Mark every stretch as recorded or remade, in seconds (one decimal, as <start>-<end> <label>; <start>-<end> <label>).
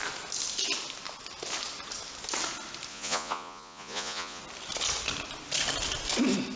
0.0-2.9 recorded; 2.9-4.4 remade; 4.4-6.6 recorded